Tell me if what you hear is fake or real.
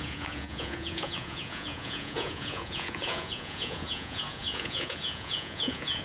fake